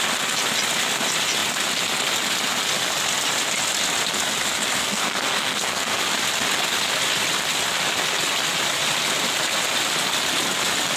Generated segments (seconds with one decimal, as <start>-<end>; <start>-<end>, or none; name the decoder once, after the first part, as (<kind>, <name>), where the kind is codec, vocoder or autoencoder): 4.8-6.0 (codec, SNAC)